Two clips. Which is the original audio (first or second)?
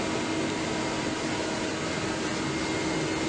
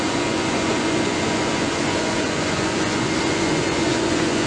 first